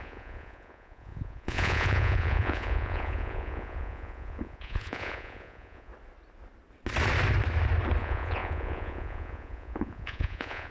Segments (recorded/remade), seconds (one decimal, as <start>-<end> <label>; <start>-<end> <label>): 0.0-5.9 remade; 5.9-8.0 recorded; 8.0-10.7 remade